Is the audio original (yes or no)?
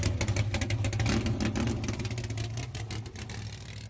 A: yes